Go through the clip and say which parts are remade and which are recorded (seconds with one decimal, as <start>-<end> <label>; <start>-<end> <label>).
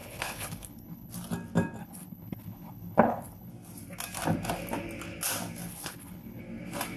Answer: 0.0-1.1 remade; 1.1-1.8 recorded; 1.8-3.5 remade; 3.5-5.7 recorded; 5.7-6.4 remade; 6.4-7.0 recorded